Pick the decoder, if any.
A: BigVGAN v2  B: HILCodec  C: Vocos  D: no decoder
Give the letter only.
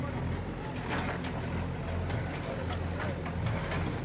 D